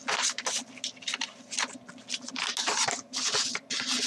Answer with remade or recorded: recorded